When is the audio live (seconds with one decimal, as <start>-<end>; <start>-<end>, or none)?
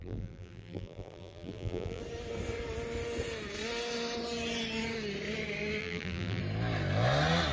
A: 2.0-5.8; 6.4-7.5